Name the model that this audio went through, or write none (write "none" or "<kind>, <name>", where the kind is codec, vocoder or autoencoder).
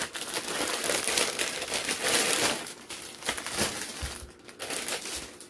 none